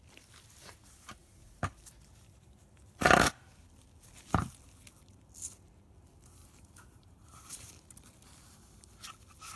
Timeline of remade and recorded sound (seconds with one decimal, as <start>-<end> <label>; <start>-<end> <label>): 0.0-1.2 recorded; 1.2-3.3 remade; 3.3-6.4 recorded; 6.4-7.7 remade; 7.7-9.6 recorded